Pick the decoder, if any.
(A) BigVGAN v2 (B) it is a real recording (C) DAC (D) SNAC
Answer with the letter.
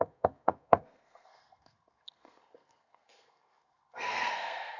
D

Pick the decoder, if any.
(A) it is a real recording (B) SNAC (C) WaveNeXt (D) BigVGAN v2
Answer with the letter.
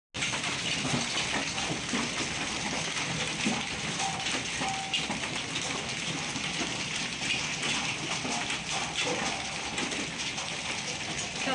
A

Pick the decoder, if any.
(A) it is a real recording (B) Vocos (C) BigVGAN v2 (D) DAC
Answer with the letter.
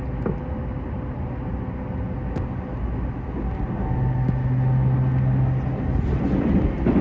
A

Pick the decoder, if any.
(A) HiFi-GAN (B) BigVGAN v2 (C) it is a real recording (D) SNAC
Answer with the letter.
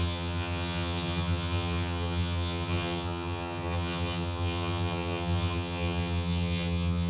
A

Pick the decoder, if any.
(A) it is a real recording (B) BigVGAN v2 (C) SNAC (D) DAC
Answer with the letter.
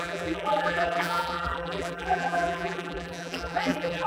B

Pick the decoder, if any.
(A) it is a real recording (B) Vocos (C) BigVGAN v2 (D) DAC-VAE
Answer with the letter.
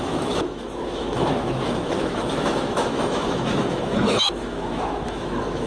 D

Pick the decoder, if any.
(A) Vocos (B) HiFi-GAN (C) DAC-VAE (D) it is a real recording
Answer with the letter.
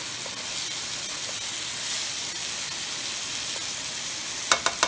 D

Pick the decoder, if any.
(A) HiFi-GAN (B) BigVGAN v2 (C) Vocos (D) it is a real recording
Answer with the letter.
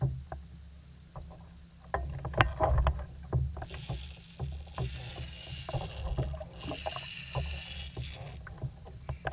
D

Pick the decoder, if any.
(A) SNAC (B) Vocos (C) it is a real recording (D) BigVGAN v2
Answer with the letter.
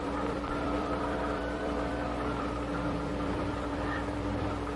D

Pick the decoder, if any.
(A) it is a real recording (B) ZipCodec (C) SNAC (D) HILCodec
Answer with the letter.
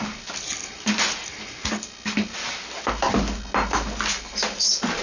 A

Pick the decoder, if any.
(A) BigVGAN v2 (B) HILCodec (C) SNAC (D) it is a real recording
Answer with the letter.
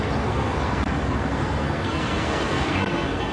C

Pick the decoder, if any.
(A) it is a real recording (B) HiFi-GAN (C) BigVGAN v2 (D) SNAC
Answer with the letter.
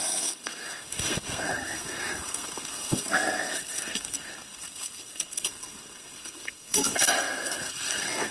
D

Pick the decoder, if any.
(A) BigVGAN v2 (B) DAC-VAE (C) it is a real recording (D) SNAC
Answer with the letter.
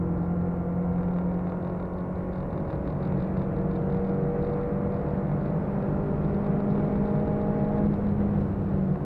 C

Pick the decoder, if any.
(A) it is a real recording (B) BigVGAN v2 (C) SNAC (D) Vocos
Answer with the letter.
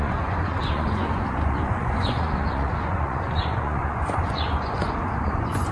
D